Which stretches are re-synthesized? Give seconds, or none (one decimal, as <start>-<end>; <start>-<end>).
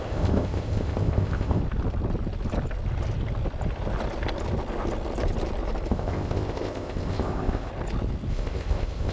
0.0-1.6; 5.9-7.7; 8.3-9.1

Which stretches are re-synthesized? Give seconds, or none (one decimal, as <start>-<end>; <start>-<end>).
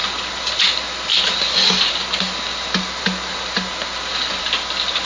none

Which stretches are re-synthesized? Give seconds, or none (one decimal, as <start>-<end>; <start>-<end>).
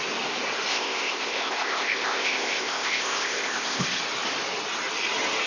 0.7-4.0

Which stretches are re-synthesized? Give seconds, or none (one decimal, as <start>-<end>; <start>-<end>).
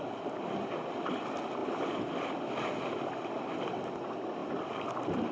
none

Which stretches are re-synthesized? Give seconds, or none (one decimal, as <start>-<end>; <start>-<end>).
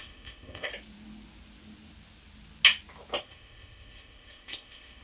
0.0-0.7; 3.2-5.0